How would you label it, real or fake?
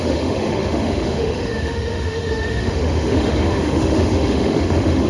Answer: fake